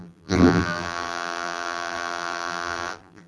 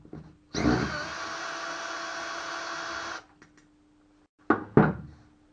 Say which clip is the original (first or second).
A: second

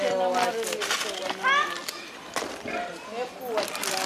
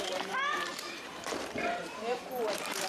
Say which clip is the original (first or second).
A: first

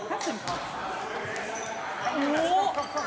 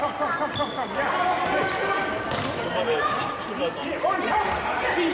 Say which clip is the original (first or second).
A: first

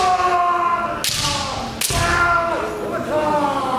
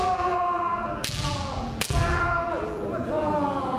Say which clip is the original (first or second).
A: first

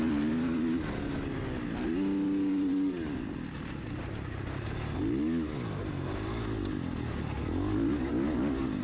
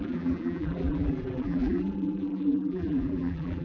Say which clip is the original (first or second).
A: first